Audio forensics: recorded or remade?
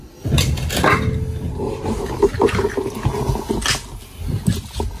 recorded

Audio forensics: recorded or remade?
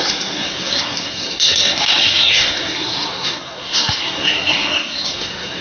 remade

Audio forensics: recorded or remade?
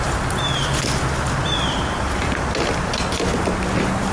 recorded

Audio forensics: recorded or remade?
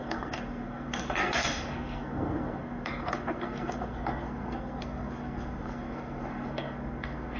remade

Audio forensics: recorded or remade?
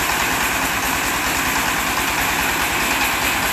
recorded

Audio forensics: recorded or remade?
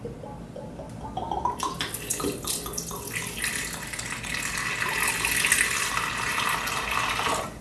recorded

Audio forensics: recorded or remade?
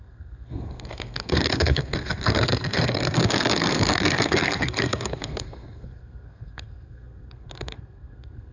remade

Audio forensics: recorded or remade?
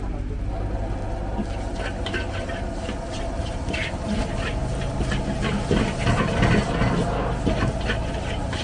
recorded